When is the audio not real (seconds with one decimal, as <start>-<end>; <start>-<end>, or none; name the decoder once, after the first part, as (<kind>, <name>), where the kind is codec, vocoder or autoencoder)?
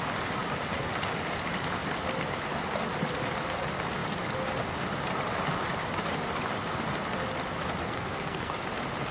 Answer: 7.8-8.5 (codec, SNAC)